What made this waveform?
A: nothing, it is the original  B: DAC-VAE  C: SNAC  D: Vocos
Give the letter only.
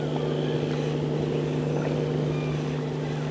A